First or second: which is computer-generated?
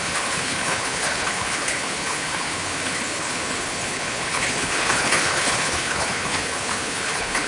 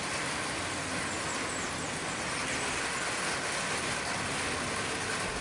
first